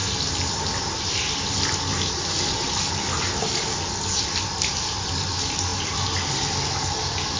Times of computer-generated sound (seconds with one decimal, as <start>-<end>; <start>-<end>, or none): none